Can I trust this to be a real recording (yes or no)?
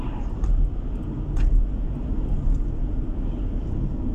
yes